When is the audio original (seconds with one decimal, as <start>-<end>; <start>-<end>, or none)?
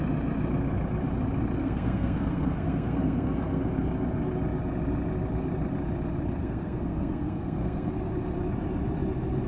0.0-1.6; 3.6-6.4; 7.9-9.5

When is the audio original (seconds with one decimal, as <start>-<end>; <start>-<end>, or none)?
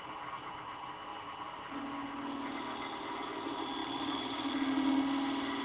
0.0-1.1; 1.8-3.8; 4.5-5.6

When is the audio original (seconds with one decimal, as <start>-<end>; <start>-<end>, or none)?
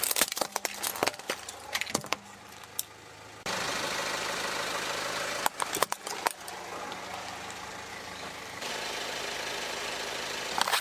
0.0-7.9; 8.7-10.8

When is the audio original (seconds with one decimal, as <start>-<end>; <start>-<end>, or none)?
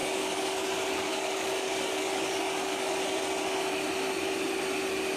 3.0-5.2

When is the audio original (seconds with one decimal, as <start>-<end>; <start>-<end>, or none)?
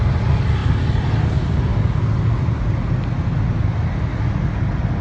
0.0-5.0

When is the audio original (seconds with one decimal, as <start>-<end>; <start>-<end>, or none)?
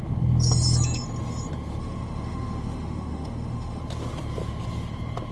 0.0-1.8; 3.8-5.3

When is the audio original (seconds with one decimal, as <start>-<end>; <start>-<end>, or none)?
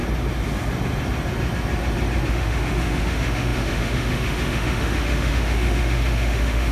0.0-2.3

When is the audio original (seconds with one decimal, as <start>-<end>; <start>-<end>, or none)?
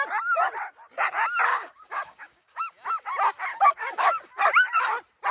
0.0-1.5; 2.7-3.5; 4.3-5.3